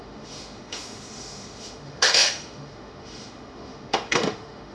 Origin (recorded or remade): remade